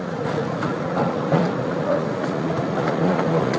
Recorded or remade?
remade